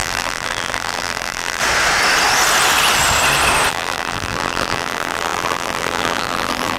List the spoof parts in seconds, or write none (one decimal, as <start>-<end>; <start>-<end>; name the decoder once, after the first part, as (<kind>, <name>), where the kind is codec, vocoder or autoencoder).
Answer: 0.0-1.6 (vocoder, BigVGAN v2); 3.7-6.8

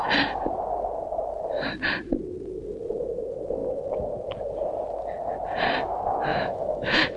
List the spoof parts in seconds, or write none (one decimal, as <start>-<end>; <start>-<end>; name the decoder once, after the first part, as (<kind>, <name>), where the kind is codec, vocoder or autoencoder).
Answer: 6.3-7.2 (autoencoder, DAC-VAE)

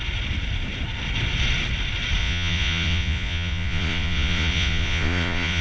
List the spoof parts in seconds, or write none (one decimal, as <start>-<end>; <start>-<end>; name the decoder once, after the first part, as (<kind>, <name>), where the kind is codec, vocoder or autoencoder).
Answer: 2.2-5.6 (vocoder, Vocos)

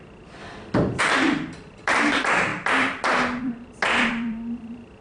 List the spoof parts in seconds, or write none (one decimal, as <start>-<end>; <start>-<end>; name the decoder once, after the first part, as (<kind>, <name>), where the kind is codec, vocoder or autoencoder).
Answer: 0.0-0.4 (vocoder, BigVGAN v2); 1.0-2.5; 3.4-5.0

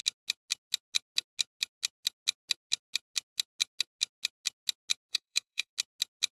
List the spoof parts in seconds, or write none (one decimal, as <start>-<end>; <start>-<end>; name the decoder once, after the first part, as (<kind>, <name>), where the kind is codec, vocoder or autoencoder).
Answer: 5.1-5.7 (codec, SNAC)